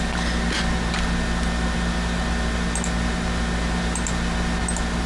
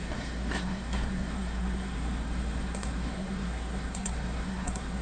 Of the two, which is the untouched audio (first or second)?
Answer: first